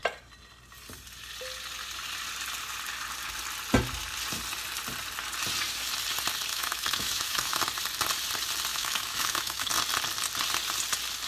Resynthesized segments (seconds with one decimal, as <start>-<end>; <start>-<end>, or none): 6.5-7.6; 8.7-9.7